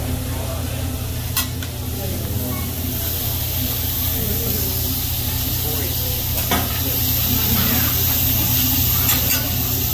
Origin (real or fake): real